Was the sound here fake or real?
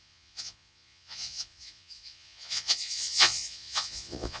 fake